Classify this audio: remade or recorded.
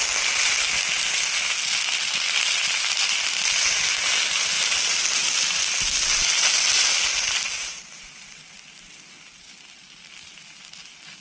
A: recorded